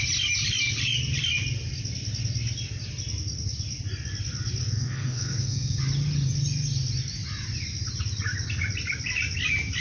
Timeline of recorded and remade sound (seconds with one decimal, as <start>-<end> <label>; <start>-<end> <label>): 0.0-4.6 recorded; 4.6-5.8 remade; 5.8-9.8 recorded

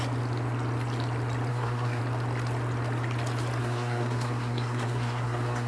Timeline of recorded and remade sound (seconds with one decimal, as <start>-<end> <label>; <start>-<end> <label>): 0.0-1.5 recorded; 1.5-2.0 remade; 2.0-3.6 recorded; 3.6-5.7 remade

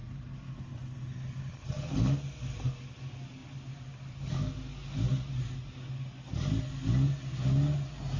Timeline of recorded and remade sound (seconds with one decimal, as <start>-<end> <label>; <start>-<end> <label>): 0.0-8.2 recorded

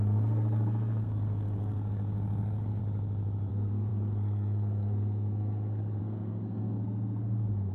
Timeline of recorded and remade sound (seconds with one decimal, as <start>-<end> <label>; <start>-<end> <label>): 0.0-2.8 remade; 2.8-3.5 recorded; 3.5-7.7 remade

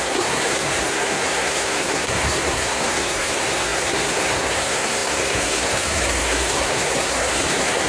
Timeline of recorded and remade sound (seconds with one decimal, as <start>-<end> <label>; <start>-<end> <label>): 0.0-7.9 remade

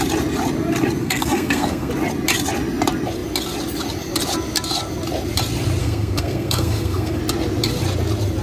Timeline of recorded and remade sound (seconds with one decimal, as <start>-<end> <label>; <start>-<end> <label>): 0.0-1.0 recorded; 1.0-1.9 remade; 1.9-5.8 recorded; 5.8-7.2 remade; 7.2-8.4 recorded